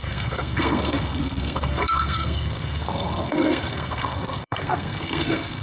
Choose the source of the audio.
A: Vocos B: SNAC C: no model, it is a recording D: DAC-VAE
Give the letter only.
B